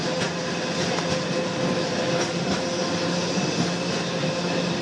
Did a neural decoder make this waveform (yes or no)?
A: no